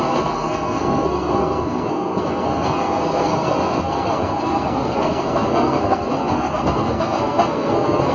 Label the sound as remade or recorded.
remade